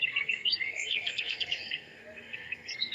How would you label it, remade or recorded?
remade